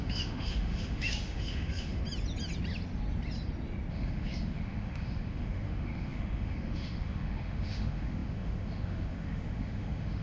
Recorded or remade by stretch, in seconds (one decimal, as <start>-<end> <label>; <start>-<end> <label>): 0.0-2.0 remade; 2.0-3.9 recorded; 3.9-10.2 remade